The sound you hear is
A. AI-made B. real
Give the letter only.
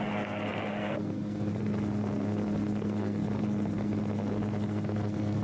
A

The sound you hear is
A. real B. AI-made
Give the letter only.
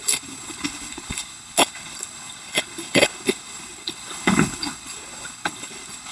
B